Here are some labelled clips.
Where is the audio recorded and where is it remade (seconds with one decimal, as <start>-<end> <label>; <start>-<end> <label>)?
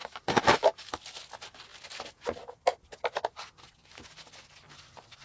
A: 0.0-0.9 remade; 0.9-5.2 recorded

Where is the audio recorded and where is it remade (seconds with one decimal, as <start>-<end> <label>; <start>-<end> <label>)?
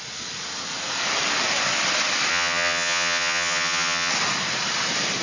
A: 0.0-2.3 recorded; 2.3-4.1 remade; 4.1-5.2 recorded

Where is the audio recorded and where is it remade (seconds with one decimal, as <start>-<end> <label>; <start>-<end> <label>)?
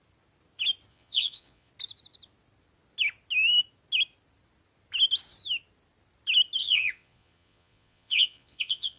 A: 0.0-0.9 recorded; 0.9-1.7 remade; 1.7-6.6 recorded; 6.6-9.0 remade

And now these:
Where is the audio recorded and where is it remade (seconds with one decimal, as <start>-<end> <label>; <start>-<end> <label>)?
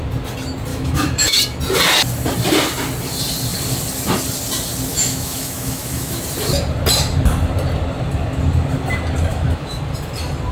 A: 0.0-0.7 recorded; 0.7-1.4 remade; 1.4-4.9 recorded; 4.9-6.2 remade; 6.2-9.3 recorded; 9.3-9.8 remade; 9.8-10.5 recorded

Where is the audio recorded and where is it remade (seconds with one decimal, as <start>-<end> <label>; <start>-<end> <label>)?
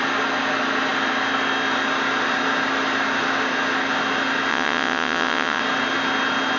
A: 0.0-4.5 recorded; 4.5-5.6 remade; 5.6-6.6 recorded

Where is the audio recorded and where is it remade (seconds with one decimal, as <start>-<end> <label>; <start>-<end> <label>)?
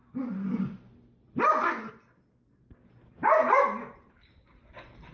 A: 0.0-5.1 recorded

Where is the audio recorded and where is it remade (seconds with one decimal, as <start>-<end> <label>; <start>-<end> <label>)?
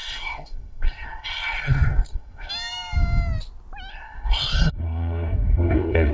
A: 0.0-2.5 remade; 2.5-3.9 recorded; 3.9-6.1 remade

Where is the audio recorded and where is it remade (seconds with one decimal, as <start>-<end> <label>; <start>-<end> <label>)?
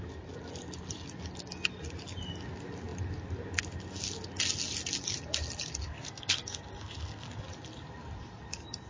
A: 0.0-5.9 recorded; 5.9-7.4 remade; 7.4-8.9 recorded